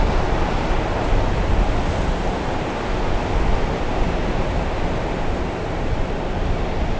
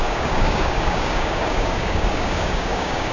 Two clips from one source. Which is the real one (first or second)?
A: first